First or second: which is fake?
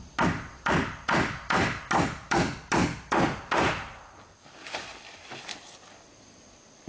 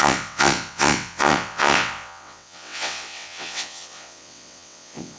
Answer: second